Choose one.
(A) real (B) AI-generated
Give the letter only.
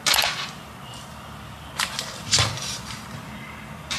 B